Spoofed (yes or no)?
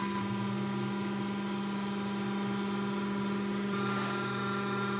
no